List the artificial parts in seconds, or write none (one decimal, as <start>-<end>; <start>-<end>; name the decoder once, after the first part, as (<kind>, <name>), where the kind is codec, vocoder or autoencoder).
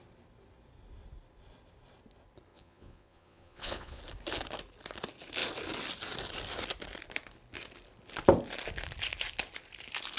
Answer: 2.5-4.0 (vocoder, Vocos)